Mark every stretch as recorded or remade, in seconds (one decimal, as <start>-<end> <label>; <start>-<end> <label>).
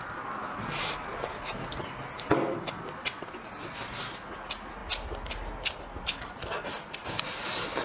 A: 0.0-7.8 recorded